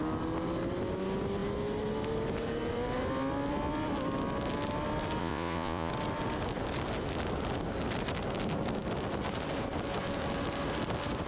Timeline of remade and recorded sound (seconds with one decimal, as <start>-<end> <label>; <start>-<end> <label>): 0.0-5.2 recorded; 5.2-5.9 remade; 5.9-11.3 recorded